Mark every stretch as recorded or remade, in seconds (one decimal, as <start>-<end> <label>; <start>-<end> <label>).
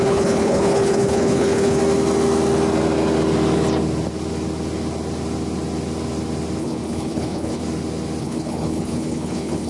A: 0.0-1.8 remade; 1.8-6.6 recorded; 6.6-7.6 remade; 7.6-8.2 recorded; 8.2-9.7 remade